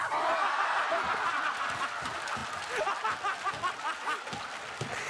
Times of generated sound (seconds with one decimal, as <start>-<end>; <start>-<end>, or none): none